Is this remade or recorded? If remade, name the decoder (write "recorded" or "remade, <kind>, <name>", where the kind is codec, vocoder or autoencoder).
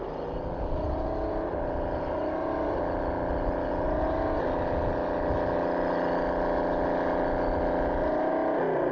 recorded